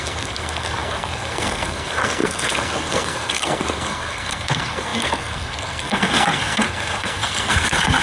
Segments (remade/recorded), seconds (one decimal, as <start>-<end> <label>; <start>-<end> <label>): 0.0-8.0 remade